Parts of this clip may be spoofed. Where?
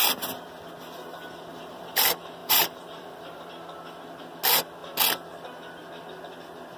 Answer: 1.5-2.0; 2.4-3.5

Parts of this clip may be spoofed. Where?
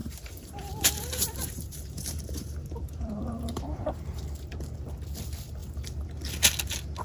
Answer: 0.0-4.2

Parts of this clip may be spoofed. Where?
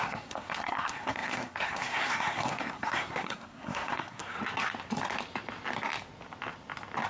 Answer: 0.0-4.4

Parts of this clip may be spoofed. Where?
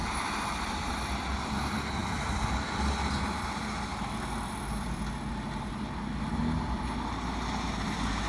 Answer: 0.0-0.9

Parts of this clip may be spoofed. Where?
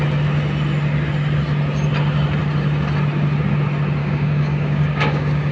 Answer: 4.0-5.5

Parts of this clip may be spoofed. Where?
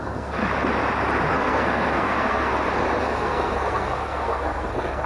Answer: 0.0-0.4; 1.3-2.5; 3.0-5.1